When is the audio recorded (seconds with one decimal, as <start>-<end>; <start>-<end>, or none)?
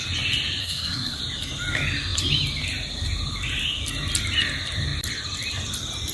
0.0-0.6; 1.2-6.1